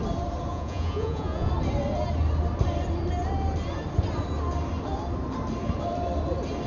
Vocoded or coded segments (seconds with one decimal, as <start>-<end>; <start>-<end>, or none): 0.5-1.5